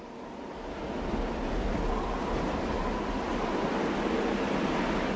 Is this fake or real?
real